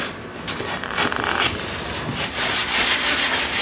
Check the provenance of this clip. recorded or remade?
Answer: recorded